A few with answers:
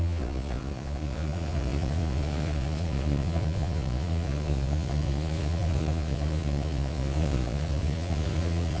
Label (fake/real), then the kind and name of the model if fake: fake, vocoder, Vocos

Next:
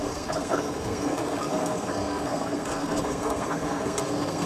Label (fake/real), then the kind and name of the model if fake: fake, codec, SNAC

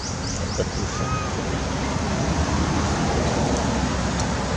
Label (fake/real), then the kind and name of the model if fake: real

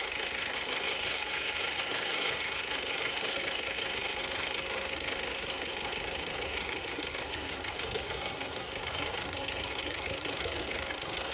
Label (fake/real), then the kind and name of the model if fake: fake, codec, SNAC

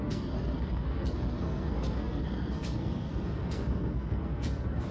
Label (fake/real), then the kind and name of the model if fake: fake, codec, SNAC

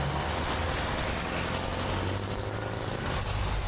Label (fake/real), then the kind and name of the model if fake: real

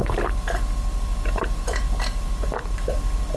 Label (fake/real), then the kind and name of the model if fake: fake, vocoder, BigVGAN v2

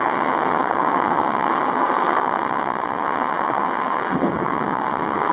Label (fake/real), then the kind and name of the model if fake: fake, vocoder, WaveNeXt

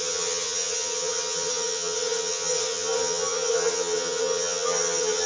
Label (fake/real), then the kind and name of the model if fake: fake, vocoder, HiFi-GAN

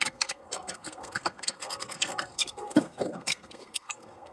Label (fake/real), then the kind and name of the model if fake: fake, codec, SNAC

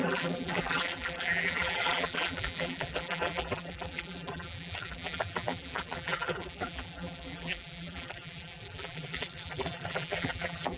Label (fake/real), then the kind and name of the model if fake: fake, vocoder, BigVGAN v2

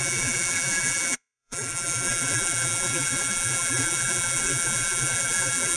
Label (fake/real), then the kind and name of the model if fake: fake, vocoder, BigVGAN v2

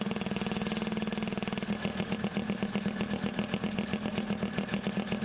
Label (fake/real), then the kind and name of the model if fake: real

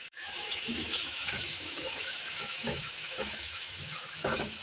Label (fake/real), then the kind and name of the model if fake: fake, autoencoder, DAC-VAE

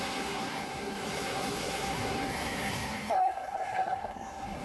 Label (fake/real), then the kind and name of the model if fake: fake, codec, SNAC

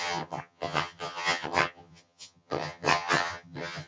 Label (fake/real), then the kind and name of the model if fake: fake, vocoder, HiFi-GAN